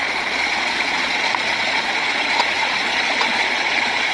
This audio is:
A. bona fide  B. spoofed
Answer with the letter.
B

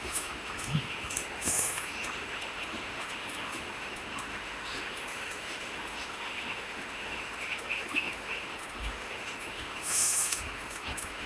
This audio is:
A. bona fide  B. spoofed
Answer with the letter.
B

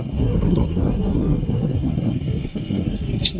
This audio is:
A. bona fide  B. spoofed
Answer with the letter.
B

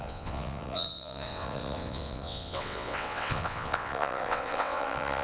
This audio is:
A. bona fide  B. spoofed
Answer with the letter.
B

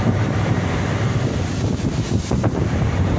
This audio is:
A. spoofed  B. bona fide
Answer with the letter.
A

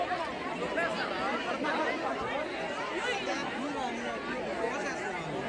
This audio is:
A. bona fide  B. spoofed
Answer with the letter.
A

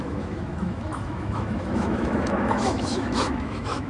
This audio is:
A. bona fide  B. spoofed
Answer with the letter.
B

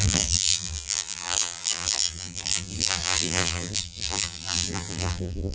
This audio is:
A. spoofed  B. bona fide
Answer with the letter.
A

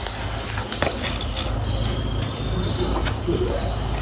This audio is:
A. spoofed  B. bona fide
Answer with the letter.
B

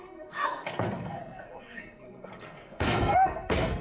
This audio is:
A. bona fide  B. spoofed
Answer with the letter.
B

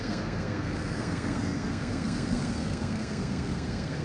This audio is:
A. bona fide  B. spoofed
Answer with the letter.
B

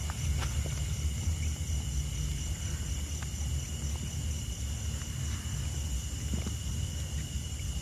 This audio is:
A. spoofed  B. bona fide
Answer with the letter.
B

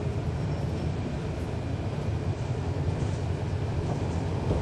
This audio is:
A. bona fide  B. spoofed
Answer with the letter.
A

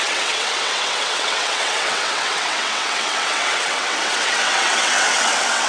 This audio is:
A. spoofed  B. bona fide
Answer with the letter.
A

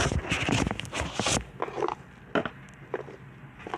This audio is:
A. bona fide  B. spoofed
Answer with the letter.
A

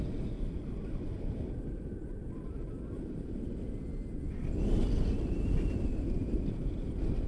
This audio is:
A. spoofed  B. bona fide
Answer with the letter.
B